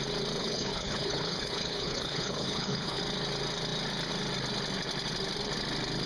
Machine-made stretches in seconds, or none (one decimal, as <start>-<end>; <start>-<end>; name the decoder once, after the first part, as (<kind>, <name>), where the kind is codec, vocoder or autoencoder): 0.4-3.0 (codec, HILCodec)